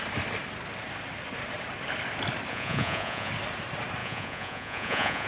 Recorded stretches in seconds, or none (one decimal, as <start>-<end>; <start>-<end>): 0.0-2.5; 3.3-4.0